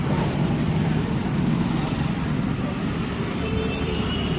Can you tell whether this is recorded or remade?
remade